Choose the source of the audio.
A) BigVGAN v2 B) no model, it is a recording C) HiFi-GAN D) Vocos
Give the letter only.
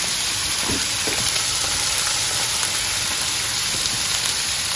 A